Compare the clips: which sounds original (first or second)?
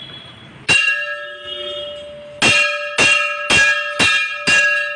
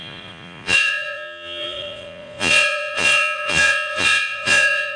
first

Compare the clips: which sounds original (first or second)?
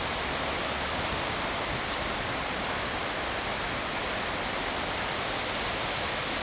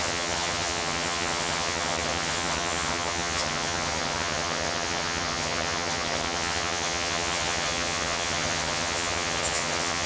first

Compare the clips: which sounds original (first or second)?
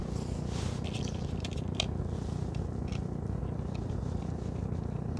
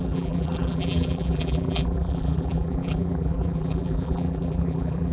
first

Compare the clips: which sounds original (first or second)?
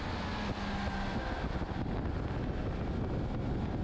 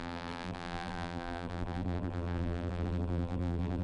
first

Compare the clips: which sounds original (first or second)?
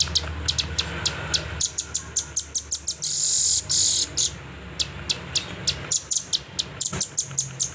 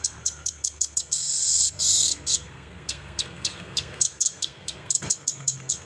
first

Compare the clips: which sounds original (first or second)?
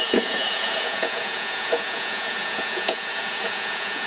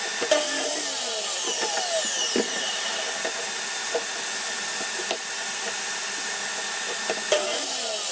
second